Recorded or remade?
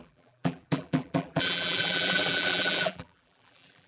remade